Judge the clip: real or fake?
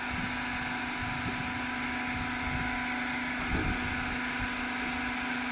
real